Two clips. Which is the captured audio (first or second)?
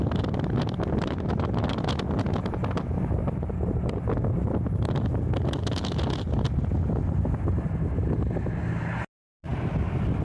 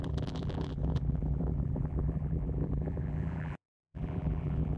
first